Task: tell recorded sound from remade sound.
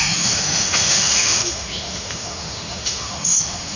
remade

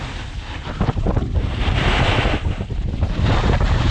recorded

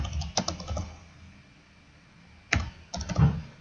recorded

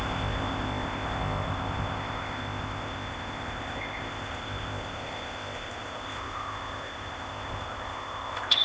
remade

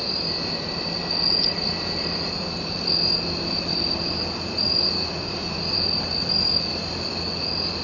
remade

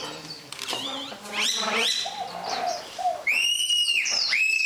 remade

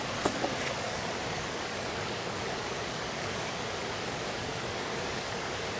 remade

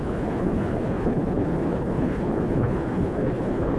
remade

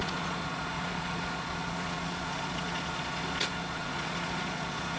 remade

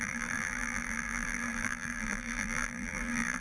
remade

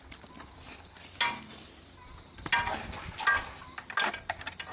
recorded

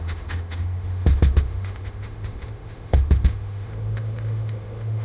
remade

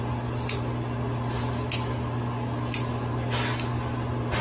recorded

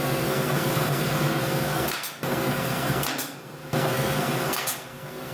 remade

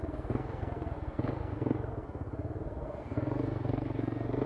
remade